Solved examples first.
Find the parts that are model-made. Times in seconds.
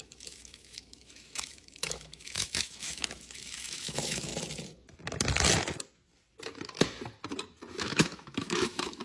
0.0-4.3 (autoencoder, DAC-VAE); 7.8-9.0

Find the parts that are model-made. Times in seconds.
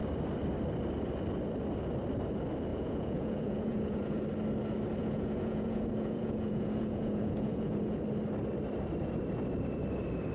2.7-4.2 (vocoder, Vocos); 5.0-8.0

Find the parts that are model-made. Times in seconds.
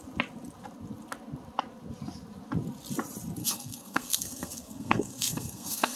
3.4-6.0 (codec, SNAC)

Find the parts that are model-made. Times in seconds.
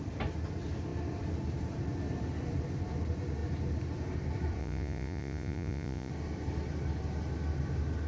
4.6-6.1 (vocoder, Vocos)